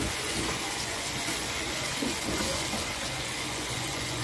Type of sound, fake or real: fake